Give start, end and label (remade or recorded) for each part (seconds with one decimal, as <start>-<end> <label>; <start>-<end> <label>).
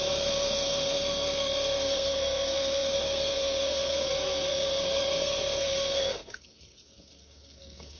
0.0-8.0 remade